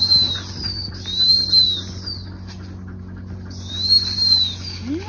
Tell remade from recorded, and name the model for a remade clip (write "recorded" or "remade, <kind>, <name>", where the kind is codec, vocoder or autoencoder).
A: recorded